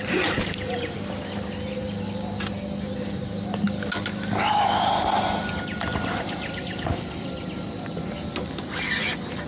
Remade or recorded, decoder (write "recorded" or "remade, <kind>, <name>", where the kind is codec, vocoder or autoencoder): recorded